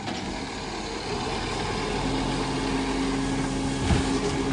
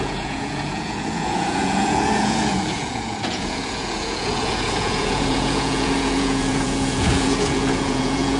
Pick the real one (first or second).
first